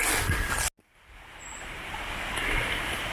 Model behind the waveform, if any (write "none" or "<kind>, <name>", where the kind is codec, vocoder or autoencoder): none